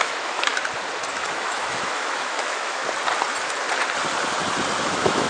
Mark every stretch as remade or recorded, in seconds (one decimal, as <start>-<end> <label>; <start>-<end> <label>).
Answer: 0.0-0.5 remade; 0.5-1.1 recorded; 1.1-2.8 remade; 2.8-4.8 recorded; 4.8-5.3 remade